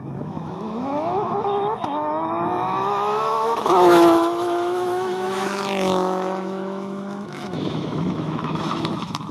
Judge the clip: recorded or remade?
remade